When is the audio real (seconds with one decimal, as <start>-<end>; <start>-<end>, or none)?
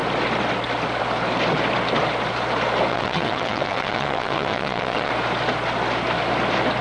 0.0-2.9; 5.1-6.8